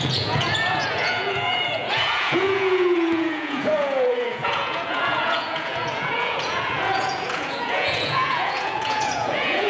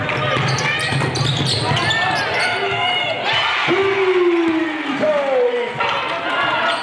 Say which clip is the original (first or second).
second